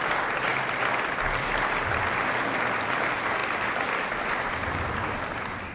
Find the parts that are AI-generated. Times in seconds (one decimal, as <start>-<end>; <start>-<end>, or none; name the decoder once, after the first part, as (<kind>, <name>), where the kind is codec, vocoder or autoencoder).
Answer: none

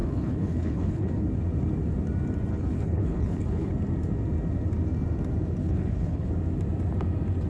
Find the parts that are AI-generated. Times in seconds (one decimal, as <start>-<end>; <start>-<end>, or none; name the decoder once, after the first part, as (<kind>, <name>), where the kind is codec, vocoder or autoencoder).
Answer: 0.0-1.1 (codec, HILCodec); 2.5-3.7; 5.6-6.3

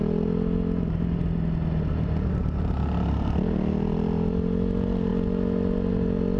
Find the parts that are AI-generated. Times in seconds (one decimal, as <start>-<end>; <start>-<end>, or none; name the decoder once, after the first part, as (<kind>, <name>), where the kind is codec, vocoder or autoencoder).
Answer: none

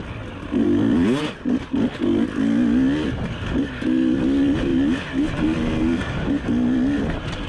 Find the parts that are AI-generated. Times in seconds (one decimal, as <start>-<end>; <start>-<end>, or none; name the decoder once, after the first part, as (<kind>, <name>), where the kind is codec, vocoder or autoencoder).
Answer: none